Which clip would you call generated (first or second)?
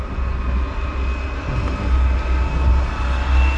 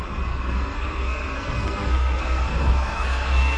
second